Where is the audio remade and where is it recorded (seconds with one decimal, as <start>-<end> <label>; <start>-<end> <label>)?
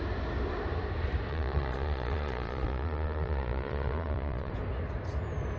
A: 0.0-1.3 recorded; 1.3-4.5 remade; 4.5-5.6 recorded